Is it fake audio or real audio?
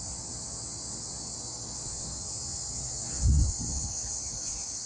fake